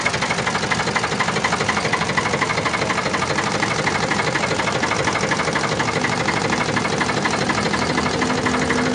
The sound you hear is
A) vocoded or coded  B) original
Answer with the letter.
B